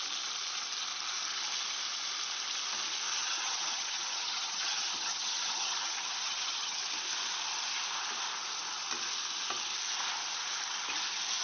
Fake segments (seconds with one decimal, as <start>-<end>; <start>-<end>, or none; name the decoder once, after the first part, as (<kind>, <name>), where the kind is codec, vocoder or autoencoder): 3.2-6.8 (vocoder, HiFi-GAN)